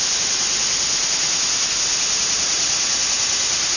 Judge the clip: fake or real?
real